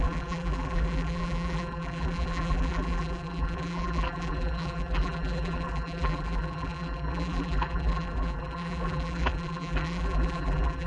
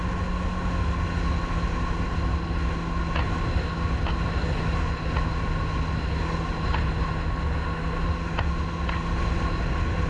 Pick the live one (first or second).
second